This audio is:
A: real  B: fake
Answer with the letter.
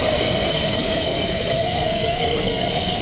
B